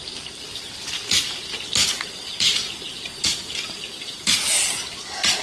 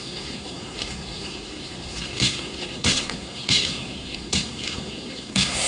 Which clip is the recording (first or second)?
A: first